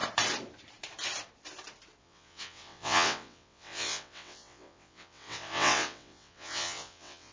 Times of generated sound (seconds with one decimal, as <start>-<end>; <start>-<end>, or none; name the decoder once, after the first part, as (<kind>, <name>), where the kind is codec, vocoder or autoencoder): 2.0-7.3 (vocoder, WaveNeXt)